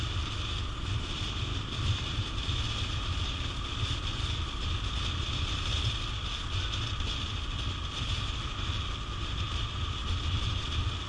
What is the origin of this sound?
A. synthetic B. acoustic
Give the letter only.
B